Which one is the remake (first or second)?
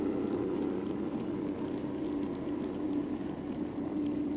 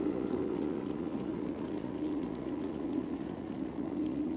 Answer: second